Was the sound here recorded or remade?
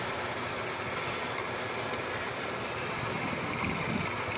recorded